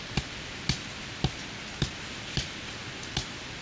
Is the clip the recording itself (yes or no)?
yes